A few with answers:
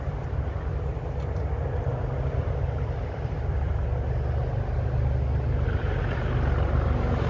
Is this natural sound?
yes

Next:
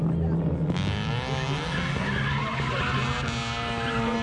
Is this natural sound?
yes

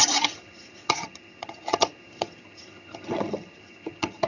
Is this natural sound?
no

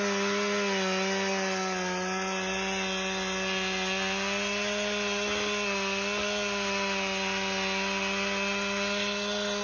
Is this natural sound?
yes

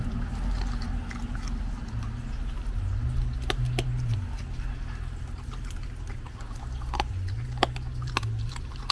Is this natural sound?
yes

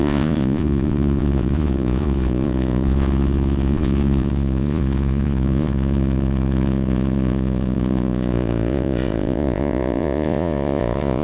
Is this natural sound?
no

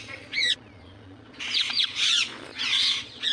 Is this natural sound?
no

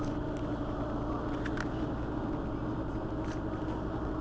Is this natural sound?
yes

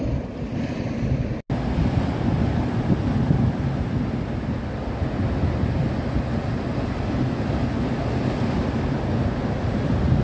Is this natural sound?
yes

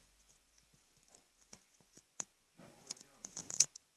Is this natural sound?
no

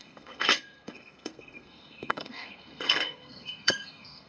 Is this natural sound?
no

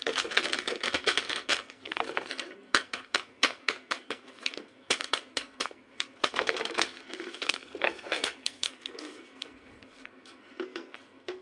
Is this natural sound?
no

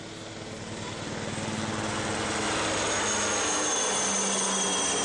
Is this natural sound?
yes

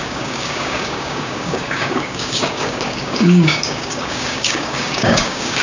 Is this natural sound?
no